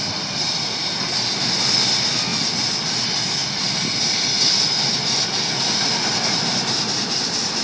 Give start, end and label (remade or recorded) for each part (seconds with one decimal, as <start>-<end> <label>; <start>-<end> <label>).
0.0-7.6 recorded